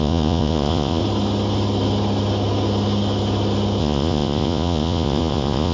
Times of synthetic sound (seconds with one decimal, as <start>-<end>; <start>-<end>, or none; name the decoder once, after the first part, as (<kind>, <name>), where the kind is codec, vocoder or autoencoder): 0.0-1.0 (vocoder, Vocos); 3.8-5.7